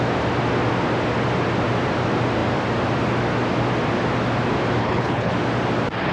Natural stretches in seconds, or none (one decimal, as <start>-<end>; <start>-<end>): 0.0-4.8; 5.3-6.1